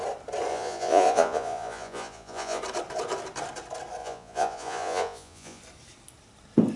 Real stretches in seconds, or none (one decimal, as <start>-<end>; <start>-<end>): 0.0-0.5; 2.6-4.0; 5.6-6.8